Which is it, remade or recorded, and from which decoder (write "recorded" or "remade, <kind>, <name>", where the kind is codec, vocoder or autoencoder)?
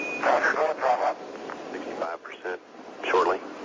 recorded